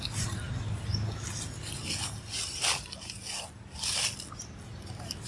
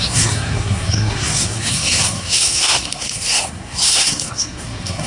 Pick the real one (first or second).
first